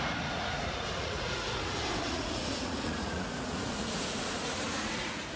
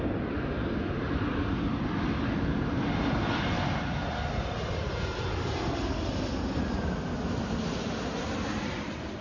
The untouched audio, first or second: second